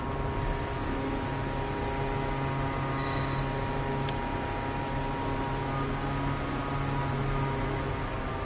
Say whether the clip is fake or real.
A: real